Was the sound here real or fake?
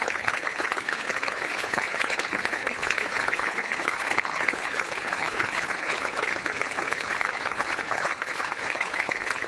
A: fake